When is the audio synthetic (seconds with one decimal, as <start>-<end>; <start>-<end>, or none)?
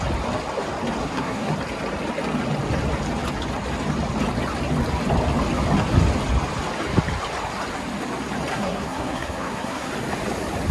1.0-1.5; 8.5-9.9